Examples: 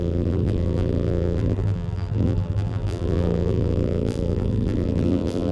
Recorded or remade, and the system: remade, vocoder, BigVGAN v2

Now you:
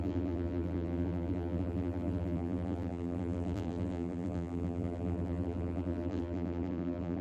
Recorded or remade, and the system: remade, vocoder, BigVGAN v2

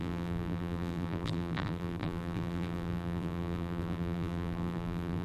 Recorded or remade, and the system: remade, vocoder, BigVGAN v2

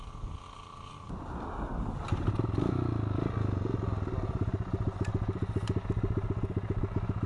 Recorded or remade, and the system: recorded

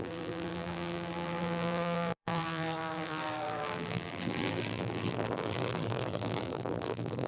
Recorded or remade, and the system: remade, vocoder, BigVGAN v2